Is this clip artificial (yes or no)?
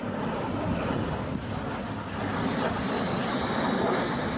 no